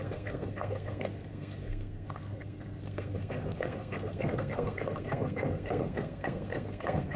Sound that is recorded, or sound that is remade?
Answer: remade